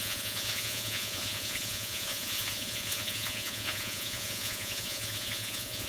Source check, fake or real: fake